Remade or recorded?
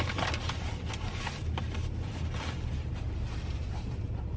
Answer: remade